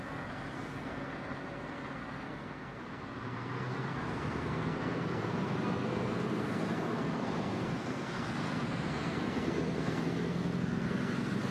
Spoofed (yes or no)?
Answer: yes